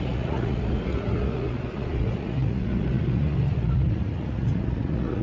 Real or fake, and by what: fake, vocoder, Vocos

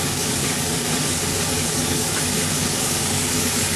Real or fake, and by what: fake, codec, DAC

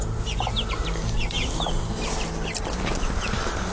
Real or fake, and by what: real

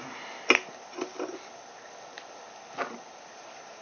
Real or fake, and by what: real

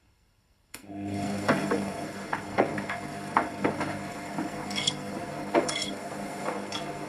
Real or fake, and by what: fake, codec, SNAC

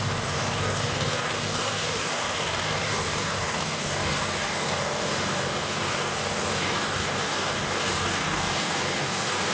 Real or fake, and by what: fake, codec, DAC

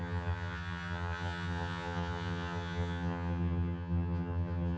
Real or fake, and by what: fake, vocoder, HiFi-GAN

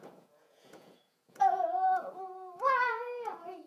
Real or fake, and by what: fake, vocoder, Vocos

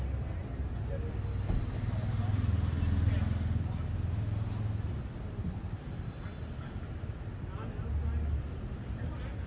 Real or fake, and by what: real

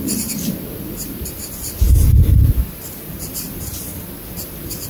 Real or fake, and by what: fake, vocoder, BigVGAN v2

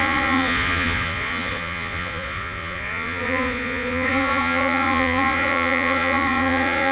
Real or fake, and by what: fake, vocoder, Vocos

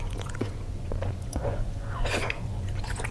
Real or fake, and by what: fake, vocoder, Vocos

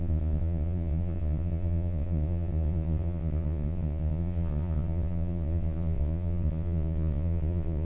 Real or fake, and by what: fake, vocoder, Vocos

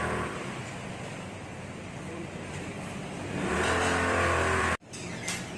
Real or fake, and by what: fake, vocoder, BigVGAN v2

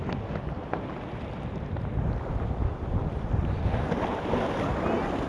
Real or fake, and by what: real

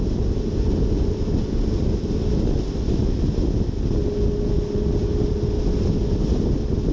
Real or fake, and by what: real